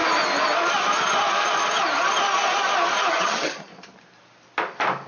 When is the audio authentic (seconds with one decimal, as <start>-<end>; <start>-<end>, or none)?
0.0-3.1; 3.7-5.1